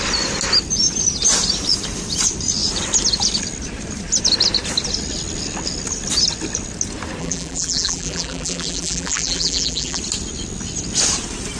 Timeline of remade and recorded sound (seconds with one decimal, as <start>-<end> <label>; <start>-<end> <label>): 0.0-7.2 recorded; 7.2-10.0 remade; 10.0-11.6 recorded